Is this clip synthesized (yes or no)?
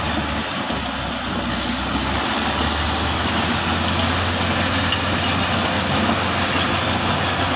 no